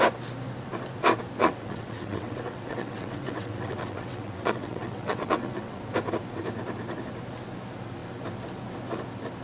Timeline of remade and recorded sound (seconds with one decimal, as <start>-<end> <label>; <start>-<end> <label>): 0.0-1.4 recorded; 1.4-5.8 remade; 5.8-9.4 recorded